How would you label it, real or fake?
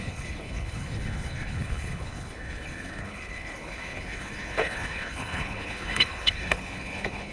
fake